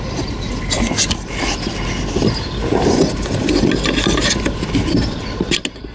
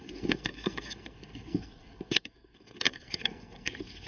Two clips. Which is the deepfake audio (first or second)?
second